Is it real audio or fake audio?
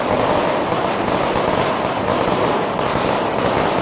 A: real